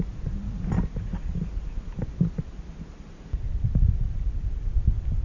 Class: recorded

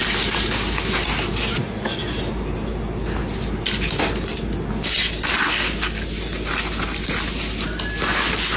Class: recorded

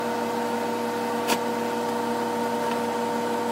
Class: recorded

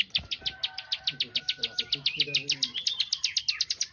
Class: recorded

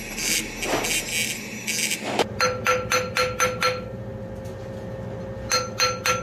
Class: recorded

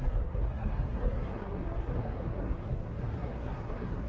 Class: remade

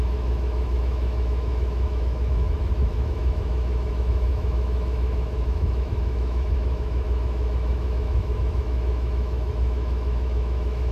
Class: remade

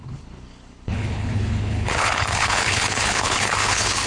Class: remade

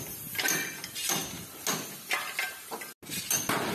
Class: recorded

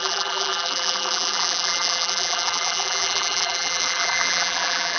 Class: remade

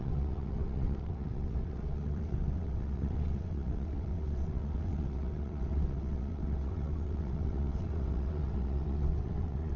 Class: remade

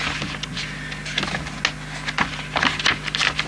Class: recorded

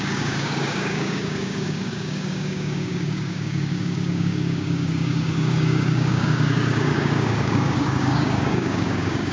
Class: remade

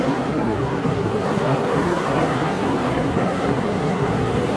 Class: remade